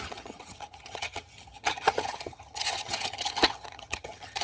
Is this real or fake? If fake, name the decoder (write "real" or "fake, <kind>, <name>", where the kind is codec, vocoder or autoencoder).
fake, vocoder, HiFi-GAN